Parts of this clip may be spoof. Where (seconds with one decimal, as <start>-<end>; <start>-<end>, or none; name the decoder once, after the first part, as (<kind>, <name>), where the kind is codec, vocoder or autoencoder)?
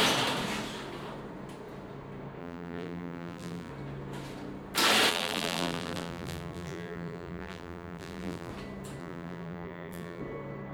2.4-3.7 (vocoder, BigVGAN v2); 5.1-8.5; 9.0-10.2